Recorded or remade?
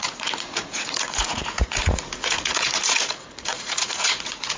remade